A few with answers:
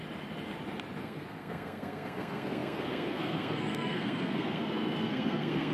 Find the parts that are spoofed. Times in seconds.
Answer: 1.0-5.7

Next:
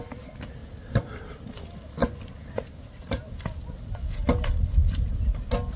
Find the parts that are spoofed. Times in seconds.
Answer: none

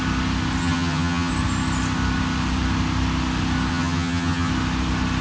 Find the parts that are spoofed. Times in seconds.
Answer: 0.6-1.3; 3.7-4.5